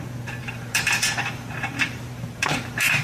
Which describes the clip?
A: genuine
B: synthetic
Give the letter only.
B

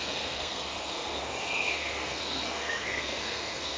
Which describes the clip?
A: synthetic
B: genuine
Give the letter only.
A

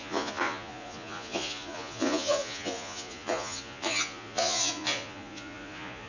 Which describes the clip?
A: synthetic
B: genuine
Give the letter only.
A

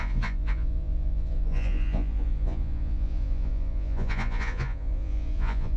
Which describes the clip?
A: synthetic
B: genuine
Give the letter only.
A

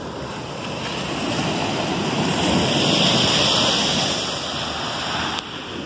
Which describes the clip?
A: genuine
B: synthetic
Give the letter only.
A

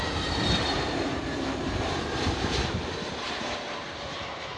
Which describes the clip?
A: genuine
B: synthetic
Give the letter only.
B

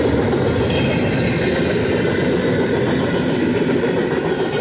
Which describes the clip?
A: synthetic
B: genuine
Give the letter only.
B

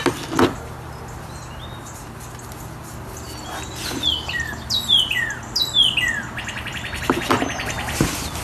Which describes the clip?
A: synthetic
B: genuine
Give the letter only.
B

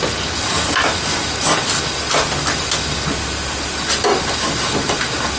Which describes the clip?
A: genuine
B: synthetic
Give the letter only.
A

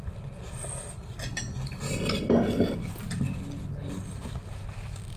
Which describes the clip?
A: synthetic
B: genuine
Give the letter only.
B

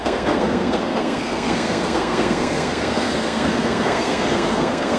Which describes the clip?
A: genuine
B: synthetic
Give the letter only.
B